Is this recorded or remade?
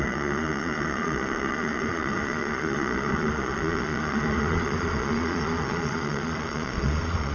remade